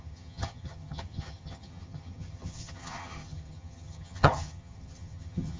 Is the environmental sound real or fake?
fake